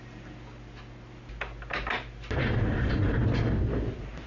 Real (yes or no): yes